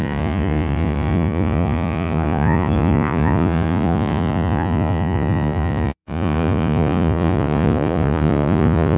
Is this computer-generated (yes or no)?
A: yes